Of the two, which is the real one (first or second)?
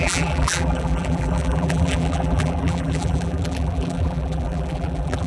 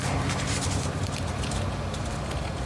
second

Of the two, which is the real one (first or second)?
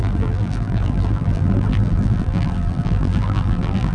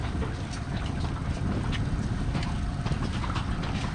second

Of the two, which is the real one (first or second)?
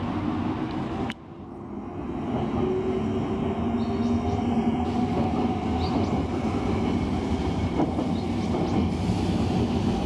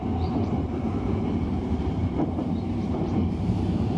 first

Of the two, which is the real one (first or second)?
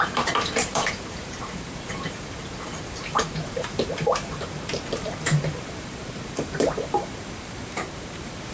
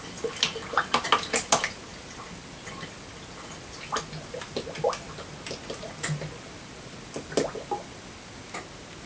second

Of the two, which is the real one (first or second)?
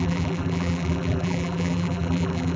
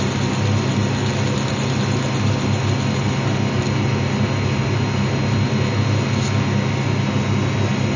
second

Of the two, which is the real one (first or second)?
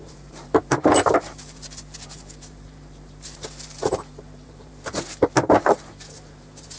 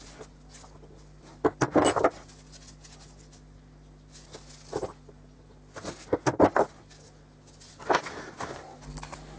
second